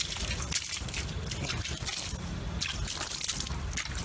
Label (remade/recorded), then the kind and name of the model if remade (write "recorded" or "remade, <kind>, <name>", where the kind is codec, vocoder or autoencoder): recorded